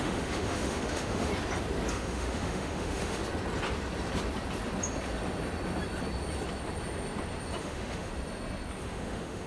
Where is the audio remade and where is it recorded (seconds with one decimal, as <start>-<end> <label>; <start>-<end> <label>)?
0.0-1.3 remade; 1.3-1.9 recorded; 1.9-3.2 remade; 3.2-7.6 recorded; 7.6-8.1 remade; 8.1-8.8 recorded; 8.8-9.5 remade